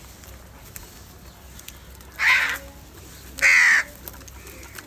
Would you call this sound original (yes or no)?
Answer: yes